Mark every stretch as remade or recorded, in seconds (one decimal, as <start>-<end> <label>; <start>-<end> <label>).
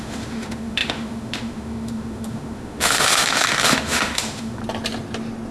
0.0-4.6 remade; 4.6-5.5 recorded